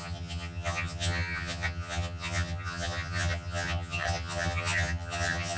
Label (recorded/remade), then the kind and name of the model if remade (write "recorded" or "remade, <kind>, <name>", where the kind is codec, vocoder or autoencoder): remade, vocoder, HiFi-GAN